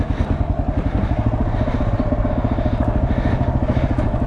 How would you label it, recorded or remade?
recorded